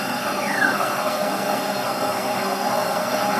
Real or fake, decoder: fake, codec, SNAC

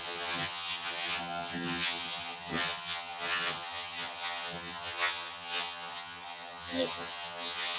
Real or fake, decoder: fake, vocoder, HiFi-GAN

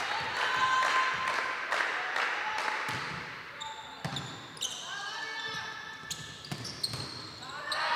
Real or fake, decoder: real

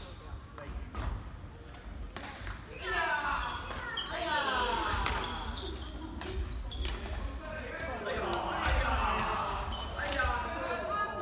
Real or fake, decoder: real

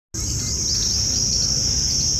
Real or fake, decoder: real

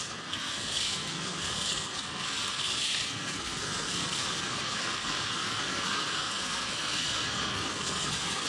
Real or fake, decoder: fake, codec, SNAC